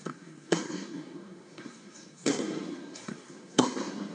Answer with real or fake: fake